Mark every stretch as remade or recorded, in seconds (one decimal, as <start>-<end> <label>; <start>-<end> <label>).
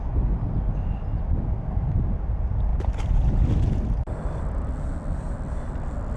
0.0-6.2 recorded